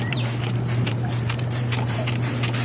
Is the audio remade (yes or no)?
yes